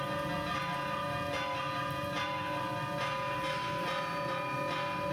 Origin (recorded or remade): recorded